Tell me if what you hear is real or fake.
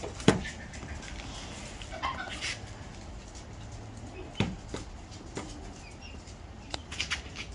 real